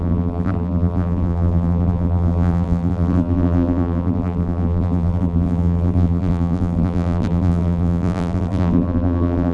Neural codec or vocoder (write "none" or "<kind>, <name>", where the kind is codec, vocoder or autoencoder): vocoder, BigVGAN v2